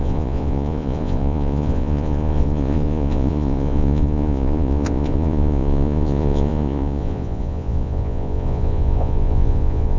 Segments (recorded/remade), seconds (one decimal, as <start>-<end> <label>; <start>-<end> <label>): 0.0-10.0 remade